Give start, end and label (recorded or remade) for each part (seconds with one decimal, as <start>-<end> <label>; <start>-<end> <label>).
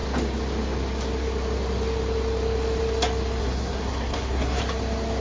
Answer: 0.0-3.4 recorded; 3.4-4.6 remade; 4.6-5.2 recorded